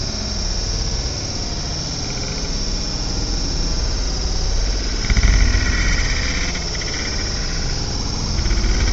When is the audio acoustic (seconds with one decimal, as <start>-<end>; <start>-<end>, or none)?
0.0-2.3; 2.9-8.9